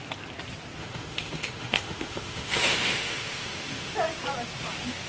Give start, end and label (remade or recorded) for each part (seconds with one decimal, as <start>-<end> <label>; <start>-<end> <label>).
0.0-0.8 recorded; 0.8-3.9 remade; 3.9-5.1 recorded